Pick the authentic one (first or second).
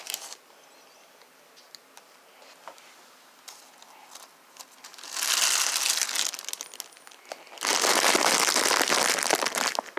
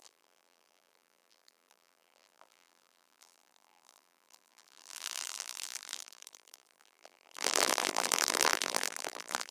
first